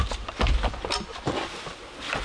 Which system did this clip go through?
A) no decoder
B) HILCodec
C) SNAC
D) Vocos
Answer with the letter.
A